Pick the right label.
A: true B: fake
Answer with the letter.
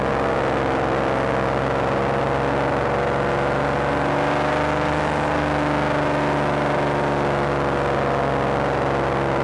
A